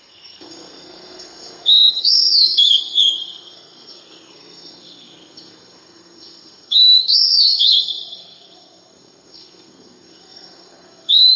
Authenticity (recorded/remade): remade